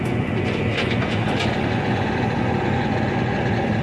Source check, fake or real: fake